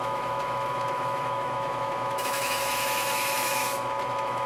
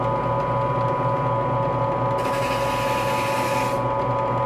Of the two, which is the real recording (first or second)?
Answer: second